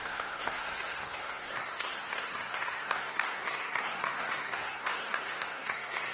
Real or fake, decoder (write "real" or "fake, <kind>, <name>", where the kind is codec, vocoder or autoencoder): fake, codec, SNAC